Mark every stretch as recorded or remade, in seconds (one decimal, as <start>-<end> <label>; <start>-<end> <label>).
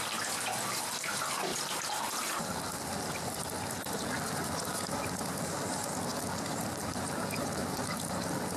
0.0-8.6 recorded